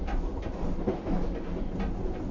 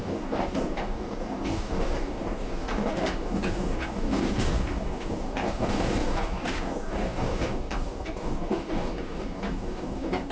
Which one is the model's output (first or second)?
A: second